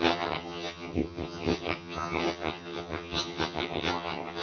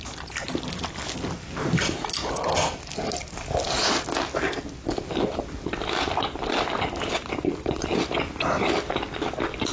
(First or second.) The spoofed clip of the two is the first